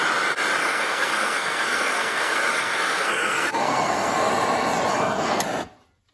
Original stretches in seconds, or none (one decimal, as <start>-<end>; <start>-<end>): 0.0-0.6; 4.3-4.9; 5.4-6.1